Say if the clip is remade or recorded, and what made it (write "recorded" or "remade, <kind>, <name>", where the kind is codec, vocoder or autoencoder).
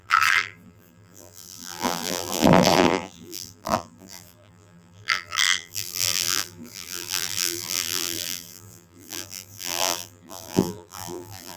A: remade, vocoder, BigVGAN v2